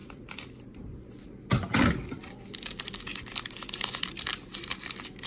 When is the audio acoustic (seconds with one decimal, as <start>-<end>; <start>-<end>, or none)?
none